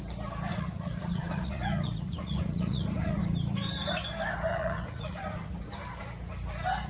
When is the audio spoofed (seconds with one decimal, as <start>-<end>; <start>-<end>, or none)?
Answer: 0.5-3.2; 4.5-5.5